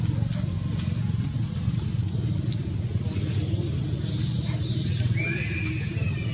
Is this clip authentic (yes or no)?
yes